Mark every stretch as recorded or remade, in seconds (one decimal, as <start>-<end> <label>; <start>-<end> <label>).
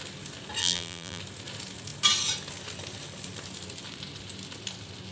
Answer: 0.0-0.6 recorded; 0.6-1.2 remade; 1.2-5.1 recorded